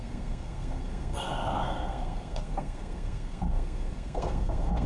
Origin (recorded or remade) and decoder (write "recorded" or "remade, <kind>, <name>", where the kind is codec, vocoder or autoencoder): remade, codec, SNAC